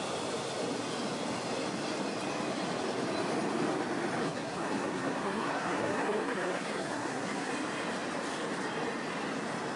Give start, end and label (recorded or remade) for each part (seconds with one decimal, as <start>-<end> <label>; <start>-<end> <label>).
0.0-4.2 recorded; 4.2-7.5 remade; 7.5-9.8 recorded

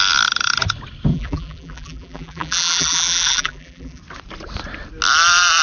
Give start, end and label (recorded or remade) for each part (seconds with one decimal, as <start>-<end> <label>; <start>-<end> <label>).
0.0-1.1 recorded; 1.1-4.0 remade; 4.0-5.6 recorded

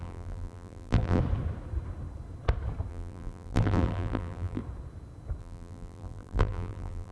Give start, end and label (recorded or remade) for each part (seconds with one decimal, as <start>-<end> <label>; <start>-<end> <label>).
0.0-1.2 remade; 1.2-2.9 recorded; 2.9-4.6 remade; 4.6-5.4 recorded; 5.4-7.1 remade

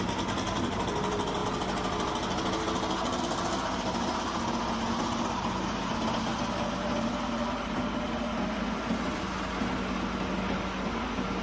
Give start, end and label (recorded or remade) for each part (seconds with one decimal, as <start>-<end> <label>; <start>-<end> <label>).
0.0-11.4 recorded

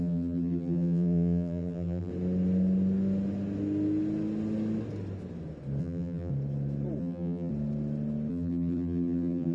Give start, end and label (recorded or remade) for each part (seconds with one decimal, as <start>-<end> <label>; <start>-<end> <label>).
0.0-2.1 remade; 2.1-5.8 recorded; 5.8-6.3 remade; 6.3-7.0 recorded; 7.0-7.5 remade; 7.5-8.3 recorded; 8.3-9.5 remade